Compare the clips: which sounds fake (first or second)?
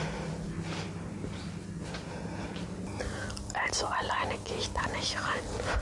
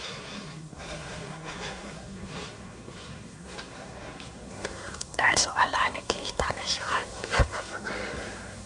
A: second